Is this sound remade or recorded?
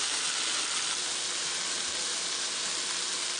recorded